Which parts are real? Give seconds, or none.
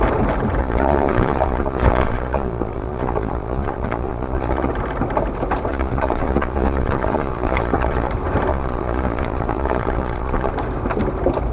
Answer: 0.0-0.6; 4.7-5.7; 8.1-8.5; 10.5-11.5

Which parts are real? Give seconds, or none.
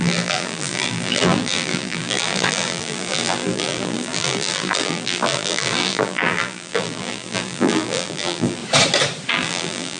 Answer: 8.6-9.3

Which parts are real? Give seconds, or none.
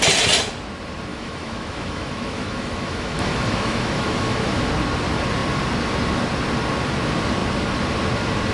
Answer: 0.0-1.1; 4.6-8.5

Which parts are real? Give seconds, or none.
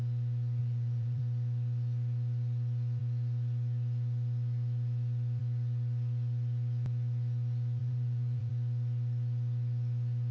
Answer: 0.0-0.6; 1.2-7.8; 8.5-10.3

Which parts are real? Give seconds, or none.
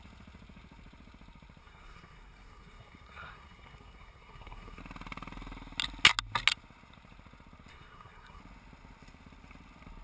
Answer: 0.0-1.6; 4.8-7.7; 8.4-10.0